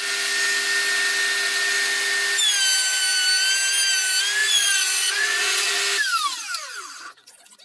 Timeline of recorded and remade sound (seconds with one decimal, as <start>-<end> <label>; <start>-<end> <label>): 0.0-4.4 recorded; 4.4-5.7 remade; 5.7-6.6 recorded; 6.6-7.6 remade